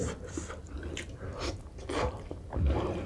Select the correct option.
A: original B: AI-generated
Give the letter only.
A